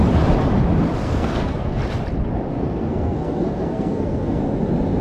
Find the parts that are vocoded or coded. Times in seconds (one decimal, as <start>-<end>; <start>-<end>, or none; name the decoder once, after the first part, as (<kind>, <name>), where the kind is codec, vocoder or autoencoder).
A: 1.0-1.8 (codec, SNAC); 2.5-4.4